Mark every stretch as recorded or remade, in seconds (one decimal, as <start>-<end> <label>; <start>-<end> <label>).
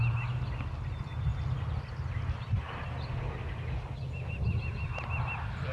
0.0-5.7 recorded